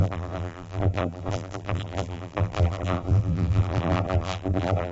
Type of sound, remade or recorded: remade